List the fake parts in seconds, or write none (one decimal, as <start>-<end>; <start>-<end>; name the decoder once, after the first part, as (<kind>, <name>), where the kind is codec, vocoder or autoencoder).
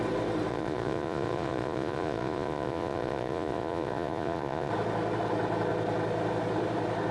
0.5-4.7 (vocoder, Vocos)